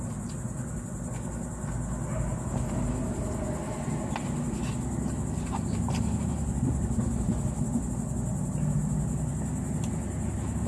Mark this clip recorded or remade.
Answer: recorded